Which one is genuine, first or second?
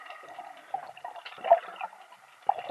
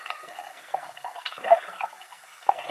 first